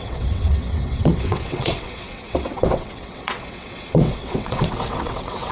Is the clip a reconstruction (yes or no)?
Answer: yes